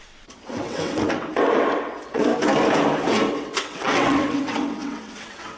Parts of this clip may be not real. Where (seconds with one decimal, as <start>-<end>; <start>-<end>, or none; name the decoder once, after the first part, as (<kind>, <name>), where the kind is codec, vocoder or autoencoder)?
0.0-2.3 (vocoder, WaveNeXt); 3.3-5.6